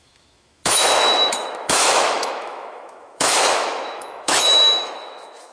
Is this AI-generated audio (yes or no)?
yes